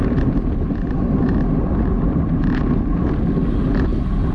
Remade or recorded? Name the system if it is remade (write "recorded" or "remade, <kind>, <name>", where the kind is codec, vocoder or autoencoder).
recorded